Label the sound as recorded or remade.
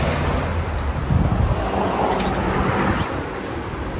recorded